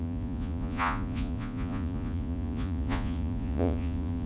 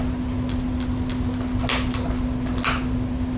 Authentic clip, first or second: second